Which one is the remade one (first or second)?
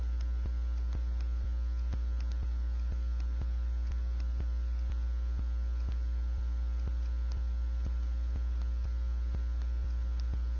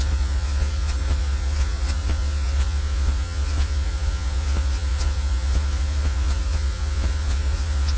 second